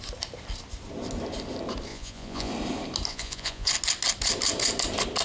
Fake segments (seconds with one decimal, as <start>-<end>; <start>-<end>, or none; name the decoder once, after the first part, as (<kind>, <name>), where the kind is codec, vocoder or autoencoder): 1.9-2.5 (vocoder, Vocos); 3.1-3.7